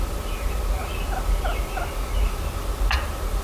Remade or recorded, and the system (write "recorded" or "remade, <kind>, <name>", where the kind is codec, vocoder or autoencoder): recorded